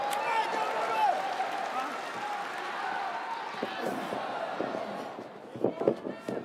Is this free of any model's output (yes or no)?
yes